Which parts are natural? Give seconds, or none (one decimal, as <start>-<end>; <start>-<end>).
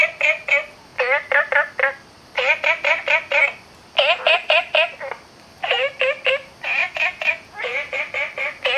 0.0-6.8; 8.0-8.8